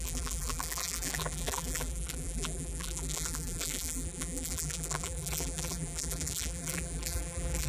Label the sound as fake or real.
fake